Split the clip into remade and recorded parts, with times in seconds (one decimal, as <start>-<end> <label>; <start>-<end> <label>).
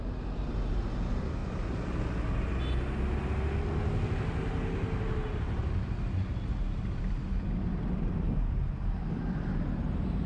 0.0-10.3 recorded